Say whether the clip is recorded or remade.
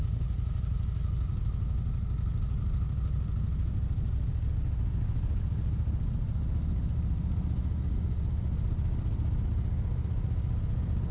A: recorded